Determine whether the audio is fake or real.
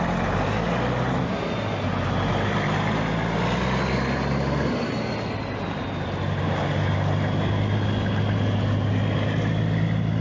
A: real